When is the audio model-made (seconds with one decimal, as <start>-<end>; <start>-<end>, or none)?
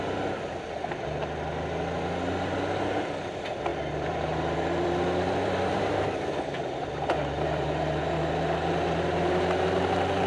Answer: 3.7-8.7